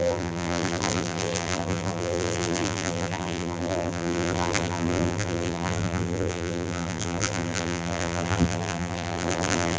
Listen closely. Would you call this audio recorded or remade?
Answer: remade